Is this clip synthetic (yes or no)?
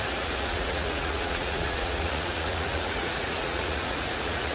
yes